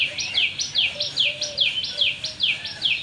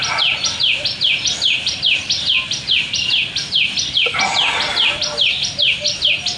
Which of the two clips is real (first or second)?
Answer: first